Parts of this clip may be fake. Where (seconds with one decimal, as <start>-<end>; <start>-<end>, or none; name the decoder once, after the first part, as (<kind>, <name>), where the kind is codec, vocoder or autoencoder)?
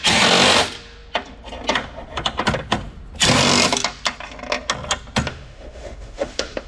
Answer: 5.3-6.7 (autoencoder, DAC-VAE)